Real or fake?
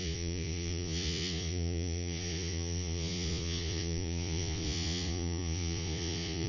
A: fake